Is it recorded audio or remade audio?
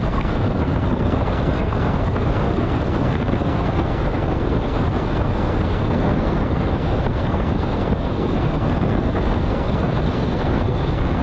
remade